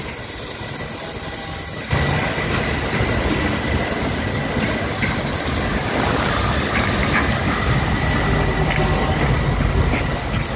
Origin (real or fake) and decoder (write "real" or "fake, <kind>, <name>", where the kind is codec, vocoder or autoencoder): real